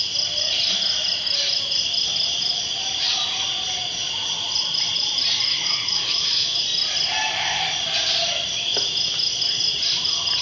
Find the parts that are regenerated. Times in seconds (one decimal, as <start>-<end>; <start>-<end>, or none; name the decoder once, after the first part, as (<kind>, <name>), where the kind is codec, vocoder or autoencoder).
5.5-6.6 (autoencoder, DAC-VAE)